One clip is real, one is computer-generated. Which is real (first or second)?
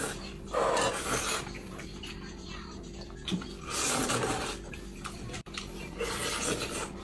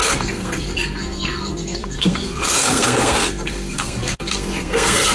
first